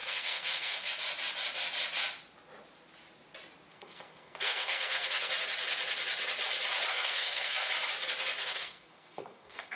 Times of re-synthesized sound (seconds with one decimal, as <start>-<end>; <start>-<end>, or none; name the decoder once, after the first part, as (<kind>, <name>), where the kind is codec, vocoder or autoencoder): 0.0-0.9 (codec, SNAC); 3.7-5.3; 6.9-7.7; 8.4-9.8